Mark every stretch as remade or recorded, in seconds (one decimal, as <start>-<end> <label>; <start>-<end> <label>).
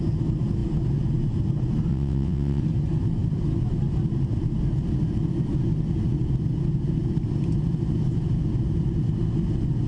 0.0-1.9 recorded; 1.9-2.6 remade; 2.6-9.9 recorded